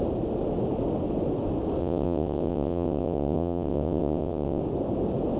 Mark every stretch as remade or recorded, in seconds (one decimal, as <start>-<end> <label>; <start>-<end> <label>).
0.0-1.8 recorded; 1.8-4.6 remade; 4.6-5.4 recorded

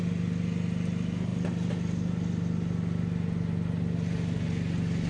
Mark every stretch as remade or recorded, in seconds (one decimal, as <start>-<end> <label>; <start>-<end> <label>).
0.0-5.1 recorded

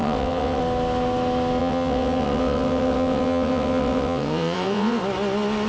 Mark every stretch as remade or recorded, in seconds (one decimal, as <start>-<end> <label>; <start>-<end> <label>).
0.0-0.6 remade; 0.6-1.6 recorded; 1.6-5.0 remade; 5.0-5.7 recorded

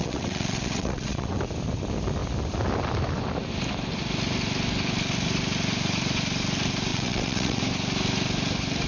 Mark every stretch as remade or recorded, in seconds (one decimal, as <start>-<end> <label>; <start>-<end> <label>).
0.0-1.4 remade; 1.4-6.9 recorded; 6.9-7.6 remade; 7.6-8.9 recorded

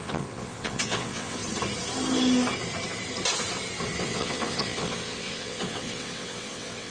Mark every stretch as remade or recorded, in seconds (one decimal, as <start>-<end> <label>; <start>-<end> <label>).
0.0-1.4 remade; 1.4-4.0 recorded; 4.0-6.9 remade

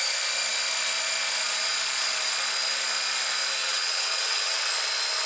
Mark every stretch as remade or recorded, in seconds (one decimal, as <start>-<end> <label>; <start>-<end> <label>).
0.0-3.6 recorded; 3.6-4.7 remade; 4.7-5.3 recorded